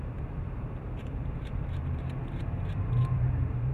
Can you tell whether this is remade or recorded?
remade